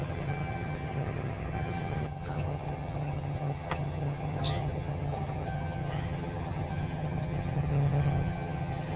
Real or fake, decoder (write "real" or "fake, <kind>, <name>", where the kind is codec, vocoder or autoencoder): fake, vocoder, HiFi-GAN